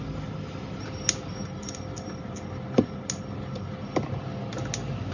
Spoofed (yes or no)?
no